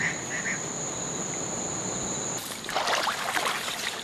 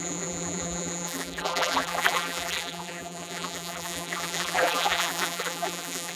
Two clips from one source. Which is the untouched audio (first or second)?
first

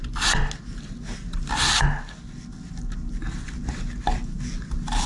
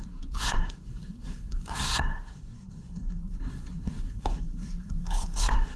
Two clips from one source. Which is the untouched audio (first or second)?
first